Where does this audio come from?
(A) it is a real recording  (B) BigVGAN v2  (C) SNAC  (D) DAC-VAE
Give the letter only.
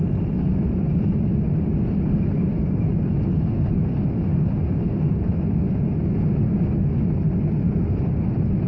A